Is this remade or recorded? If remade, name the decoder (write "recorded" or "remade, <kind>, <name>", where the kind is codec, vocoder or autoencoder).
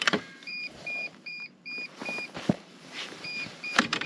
remade, vocoder, BigVGAN v2